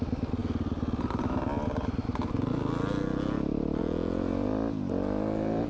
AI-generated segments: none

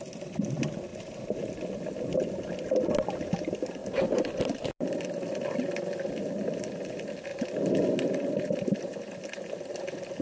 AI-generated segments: 3.8-6.2 (vocoder, BigVGAN v2)

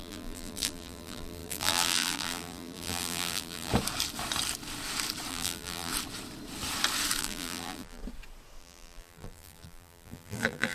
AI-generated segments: 0.0-3.7 (vocoder, BigVGAN v2); 5.3-5.9; 7.2-8.0; 8.6-10.7